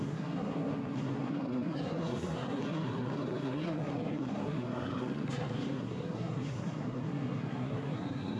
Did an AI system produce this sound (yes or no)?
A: yes